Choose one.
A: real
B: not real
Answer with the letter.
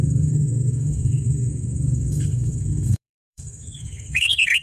B